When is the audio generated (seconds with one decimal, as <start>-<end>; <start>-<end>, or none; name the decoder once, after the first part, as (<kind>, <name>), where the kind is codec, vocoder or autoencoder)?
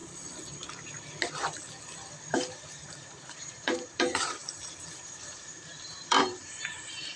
2.3-4.4 (vocoder, BigVGAN v2); 4.9-7.2